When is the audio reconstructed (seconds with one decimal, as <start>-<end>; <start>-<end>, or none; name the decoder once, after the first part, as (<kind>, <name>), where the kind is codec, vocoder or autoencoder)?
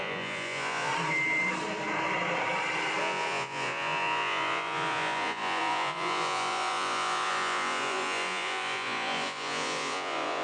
0.0-0.9 (vocoder, Vocos); 3.0-10.4